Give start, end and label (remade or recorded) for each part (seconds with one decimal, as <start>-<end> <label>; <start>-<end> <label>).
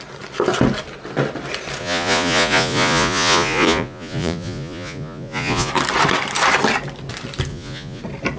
0.0-1.8 recorded; 1.8-5.7 remade; 5.7-7.5 recorded; 7.5-8.0 remade; 8.0-8.4 recorded